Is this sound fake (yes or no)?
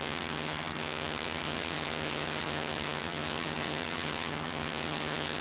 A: yes